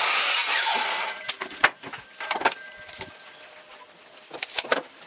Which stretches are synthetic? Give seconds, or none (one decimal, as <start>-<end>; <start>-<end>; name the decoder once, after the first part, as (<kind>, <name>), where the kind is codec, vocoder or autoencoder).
0.0-5.1 (vocoder, BigVGAN v2)